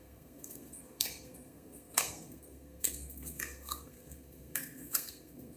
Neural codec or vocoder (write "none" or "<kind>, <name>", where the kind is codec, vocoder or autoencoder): codec, SNAC